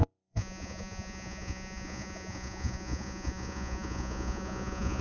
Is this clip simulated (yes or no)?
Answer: yes